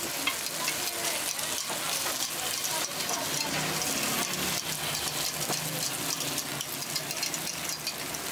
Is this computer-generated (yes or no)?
no